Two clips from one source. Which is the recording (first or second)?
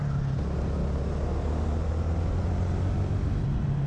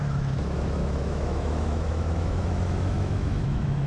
first